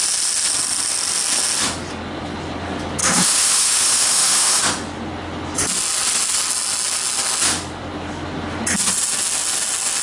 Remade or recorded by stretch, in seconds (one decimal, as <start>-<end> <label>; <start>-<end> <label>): 0.0-3.0 recorded; 3.0-4.6 remade; 4.6-10.0 recorded